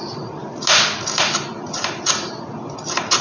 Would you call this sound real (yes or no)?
yes